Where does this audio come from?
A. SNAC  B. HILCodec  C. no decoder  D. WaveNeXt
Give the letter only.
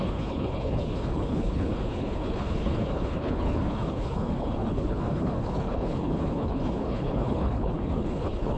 B